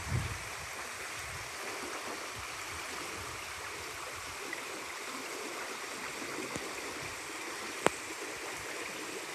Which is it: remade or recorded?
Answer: recorded